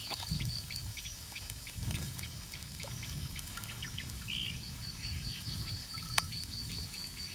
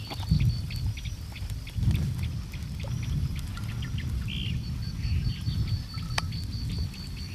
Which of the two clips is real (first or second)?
second